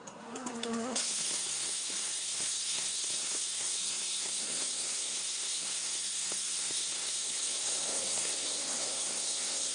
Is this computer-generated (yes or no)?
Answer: yes